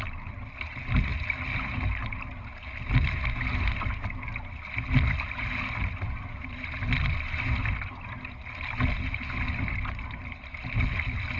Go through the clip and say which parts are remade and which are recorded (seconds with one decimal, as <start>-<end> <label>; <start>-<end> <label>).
0.0-11.4 recorded

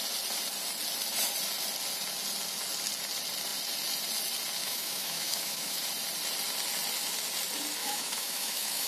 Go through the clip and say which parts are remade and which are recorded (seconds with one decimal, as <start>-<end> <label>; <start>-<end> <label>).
0.0-4.6 recorded; 4.6-5.8 remade; 5.8-7.8 recorded; 7.8-8.9 remade

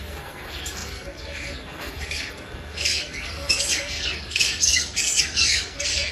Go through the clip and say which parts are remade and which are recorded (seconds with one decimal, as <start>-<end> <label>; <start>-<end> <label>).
0.0-6.1 remade

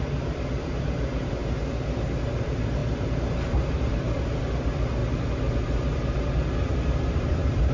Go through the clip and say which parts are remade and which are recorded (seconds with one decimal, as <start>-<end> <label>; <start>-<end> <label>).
0.0-5.0 remade; 5.0-7.1 recorded; 7.1-7.7 remade

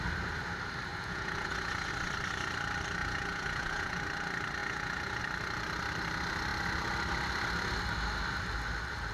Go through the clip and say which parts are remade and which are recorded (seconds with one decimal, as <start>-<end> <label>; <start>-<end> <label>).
0.0-0.9 recorded; 0.9-1.9 remade; 1.9-3.0 recorded; 3.0-4.0 remade; 4.0-4.6 recorded; 4.6-5.2 remade; 5.2-9.1 recorded

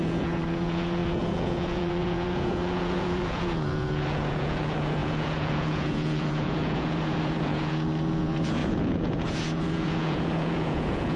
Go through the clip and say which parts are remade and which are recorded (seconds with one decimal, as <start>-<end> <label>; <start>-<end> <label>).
0.0-11.2 remade

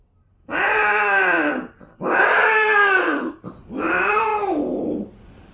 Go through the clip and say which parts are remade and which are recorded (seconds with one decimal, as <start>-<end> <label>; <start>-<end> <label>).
0.0-4.3 remade; 4.3-4.9 recorded; 4.9-5.5 remade

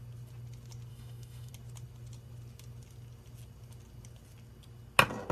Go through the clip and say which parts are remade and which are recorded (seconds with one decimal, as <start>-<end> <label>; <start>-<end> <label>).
0.0-0.9 recorded; 0.9-1.5 remade; 1.5-5.3 recorded